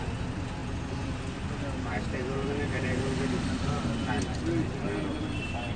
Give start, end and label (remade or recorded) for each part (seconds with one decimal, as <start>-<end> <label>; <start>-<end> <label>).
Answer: 0.0-5.8 recorded